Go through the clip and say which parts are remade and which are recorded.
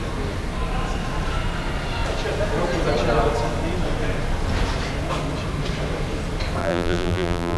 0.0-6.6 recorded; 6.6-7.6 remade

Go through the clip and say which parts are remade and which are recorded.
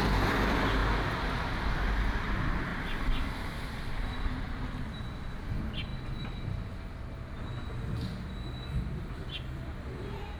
0.0-0.8 remade; 0.8-1.3 recorded; 1.3-5.9 remade; 5.9-8.8 recorded; 8.8-10.4 remade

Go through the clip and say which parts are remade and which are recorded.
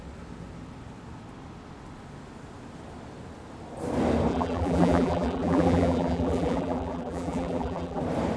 0.0-4.3 recorded; 4.3-8.0 remade; 8.0-8.4 recorded